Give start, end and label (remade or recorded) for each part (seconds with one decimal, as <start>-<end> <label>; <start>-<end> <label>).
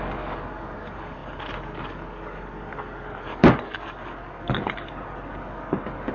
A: 0.0-6.1 remade